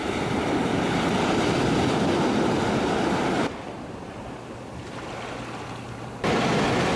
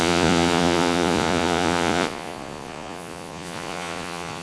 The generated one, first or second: second